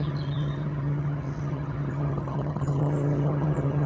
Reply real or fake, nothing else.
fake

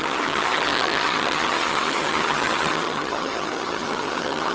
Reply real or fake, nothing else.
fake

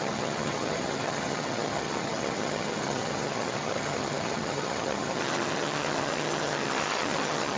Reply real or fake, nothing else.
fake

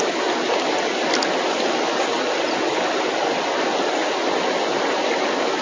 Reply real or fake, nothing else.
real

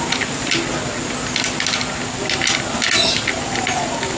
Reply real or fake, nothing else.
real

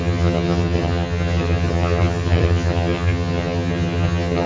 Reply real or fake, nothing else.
fake